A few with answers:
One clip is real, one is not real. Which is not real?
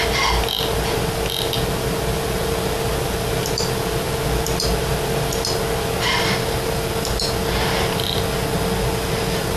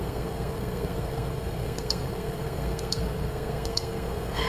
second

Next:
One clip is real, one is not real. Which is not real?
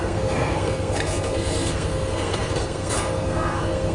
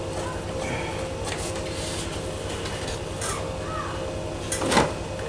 first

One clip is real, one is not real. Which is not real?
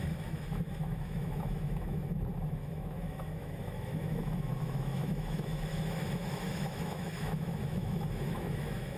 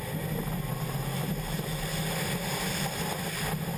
first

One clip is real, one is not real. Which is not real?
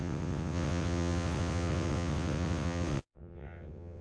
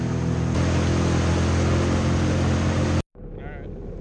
first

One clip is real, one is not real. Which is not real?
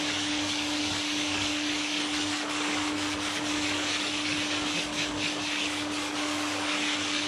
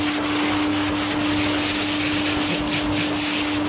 first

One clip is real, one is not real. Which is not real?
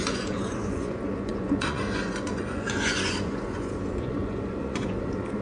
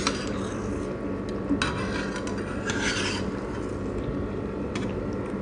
first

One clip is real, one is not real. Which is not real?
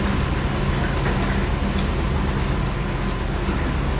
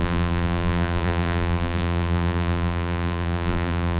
second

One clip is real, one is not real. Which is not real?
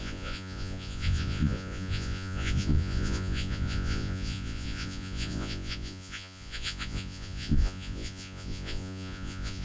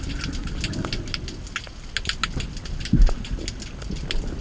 first